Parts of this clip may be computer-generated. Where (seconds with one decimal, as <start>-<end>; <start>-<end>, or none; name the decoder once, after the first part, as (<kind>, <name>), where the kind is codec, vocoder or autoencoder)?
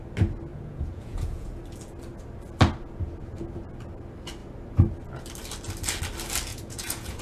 0.5-1.6 (vocoder, Vocos); 6.5-7.2